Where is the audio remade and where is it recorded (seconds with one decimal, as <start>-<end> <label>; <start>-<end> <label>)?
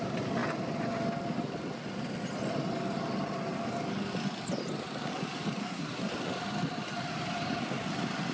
0.0-5.6 recorded; 5.6-6.1 remade; 6.1-8.3 recorded